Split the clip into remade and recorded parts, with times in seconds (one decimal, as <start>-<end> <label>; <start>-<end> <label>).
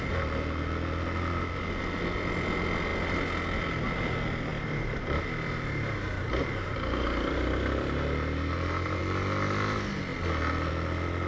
0.0-4.5 recorded; 4.5-9.0 remade; 9.0-11.3 recorded